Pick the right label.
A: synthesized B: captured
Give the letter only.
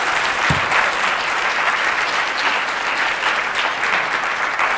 B